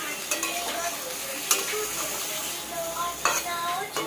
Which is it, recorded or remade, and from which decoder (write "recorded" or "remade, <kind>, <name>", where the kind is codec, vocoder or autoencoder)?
recorded